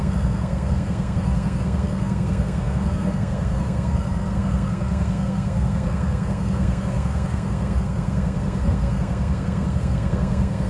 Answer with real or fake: fake